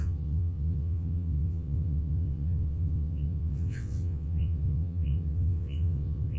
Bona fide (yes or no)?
no